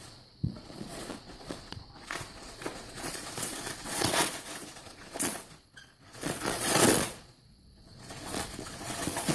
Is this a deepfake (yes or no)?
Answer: yes